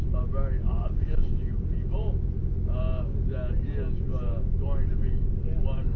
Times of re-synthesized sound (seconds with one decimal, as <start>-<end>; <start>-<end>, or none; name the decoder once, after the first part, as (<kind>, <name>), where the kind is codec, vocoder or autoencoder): none